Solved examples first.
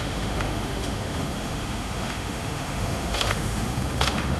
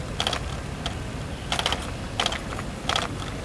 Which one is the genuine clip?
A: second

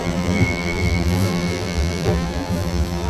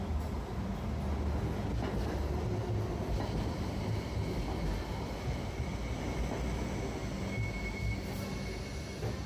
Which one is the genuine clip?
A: second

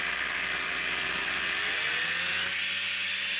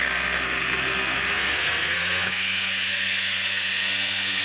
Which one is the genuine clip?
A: first